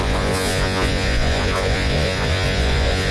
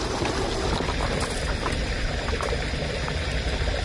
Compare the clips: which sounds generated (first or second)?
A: first